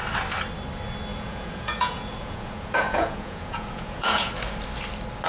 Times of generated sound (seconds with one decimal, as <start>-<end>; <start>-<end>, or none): 1.1-4.3